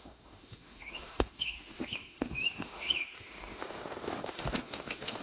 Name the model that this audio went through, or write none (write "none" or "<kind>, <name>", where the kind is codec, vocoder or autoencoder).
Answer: autoencoder, DAC-VAE